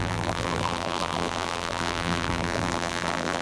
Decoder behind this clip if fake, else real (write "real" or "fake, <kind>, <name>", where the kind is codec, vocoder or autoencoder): fake, vocoder, BigVGAN v2